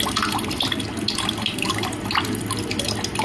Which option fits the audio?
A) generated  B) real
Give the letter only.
B